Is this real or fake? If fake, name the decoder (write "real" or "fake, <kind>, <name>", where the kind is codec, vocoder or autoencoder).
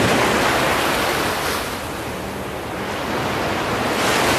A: real